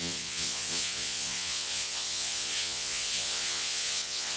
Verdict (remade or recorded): remade